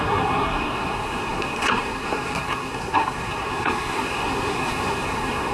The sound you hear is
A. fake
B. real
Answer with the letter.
A